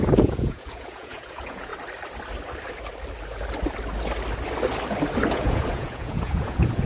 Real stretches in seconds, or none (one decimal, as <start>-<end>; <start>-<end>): 1.7-5.3